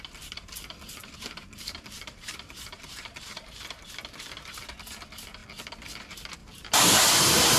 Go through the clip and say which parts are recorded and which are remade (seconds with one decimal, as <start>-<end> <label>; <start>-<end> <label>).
0.0-1.0 recorded; 1.0-3.6 remade; 3.6-6.4 recorded; 6.4-7.6 remade